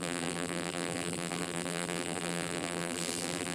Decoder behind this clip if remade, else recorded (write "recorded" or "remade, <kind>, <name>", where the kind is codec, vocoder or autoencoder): remade, vocoder, BigVGAN v2